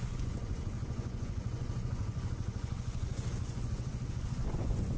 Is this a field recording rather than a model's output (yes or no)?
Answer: no